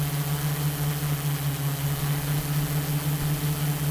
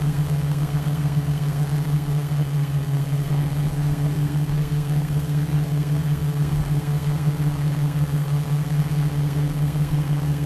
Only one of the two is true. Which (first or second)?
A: first